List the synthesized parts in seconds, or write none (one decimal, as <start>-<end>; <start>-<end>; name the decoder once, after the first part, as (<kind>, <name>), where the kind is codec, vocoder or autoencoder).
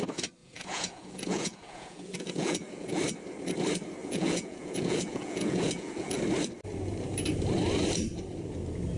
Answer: 0.4-2.9 (vocoder, Vocos); 4.0-6.2